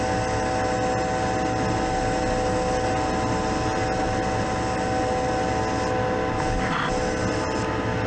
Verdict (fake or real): real